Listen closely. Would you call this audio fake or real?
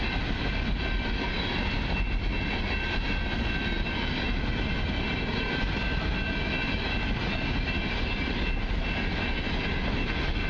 real